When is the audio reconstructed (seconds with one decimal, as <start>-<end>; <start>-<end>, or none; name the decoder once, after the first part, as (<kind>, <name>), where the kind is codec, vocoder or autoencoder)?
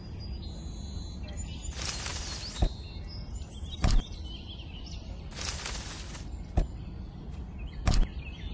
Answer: none